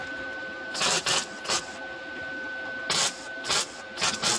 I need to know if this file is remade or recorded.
recorded